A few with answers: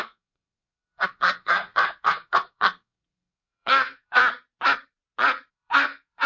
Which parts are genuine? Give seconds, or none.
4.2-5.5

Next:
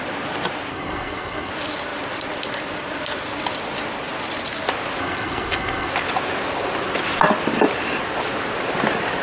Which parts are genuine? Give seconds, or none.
0.0-0.7; 1.5-5.0; 5.9-9.2

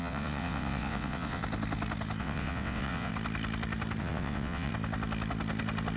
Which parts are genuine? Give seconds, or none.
1.4-2.2; 3.1-4.0; 4.7-6.0